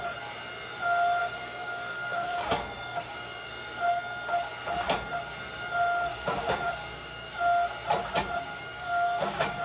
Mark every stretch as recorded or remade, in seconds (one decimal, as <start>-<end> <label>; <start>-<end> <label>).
0.0-1.2 recorded; 1.2-3.5 remade; 3.5-6.1 recorded; 6.1-7.3 remade; 7.3-8.5 recorded; 8.5-9.6 remade